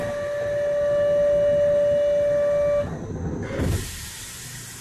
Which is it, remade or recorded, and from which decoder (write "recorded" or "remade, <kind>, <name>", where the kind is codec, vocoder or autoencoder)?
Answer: recorded